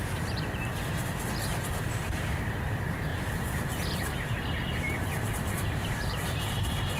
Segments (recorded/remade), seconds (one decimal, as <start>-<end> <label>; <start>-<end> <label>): 0.0-3.1 recorded; 3.1-4.3 remade; 4.3-4.7 recorded; 4.7-7.0 remade